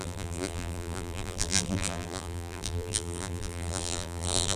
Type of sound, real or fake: fake